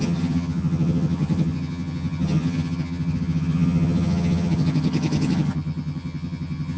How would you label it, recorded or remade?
remade